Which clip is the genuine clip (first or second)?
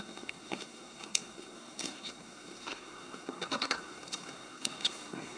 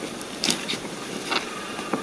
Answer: second